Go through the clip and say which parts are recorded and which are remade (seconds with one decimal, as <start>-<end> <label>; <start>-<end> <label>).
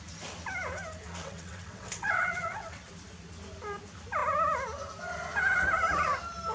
0.0-1.0 recorded; 1.0-2.9 remade; 2.9-6.5 recorded